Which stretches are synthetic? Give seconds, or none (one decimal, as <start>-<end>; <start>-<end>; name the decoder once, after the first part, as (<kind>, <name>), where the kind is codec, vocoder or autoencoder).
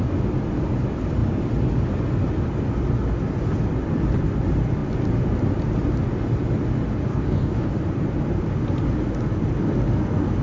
7.1-7.7 (codec, DAC)